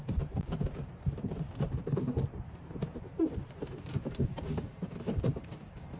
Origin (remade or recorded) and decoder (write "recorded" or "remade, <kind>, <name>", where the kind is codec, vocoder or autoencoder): remade, vocoder, BigVGAN v2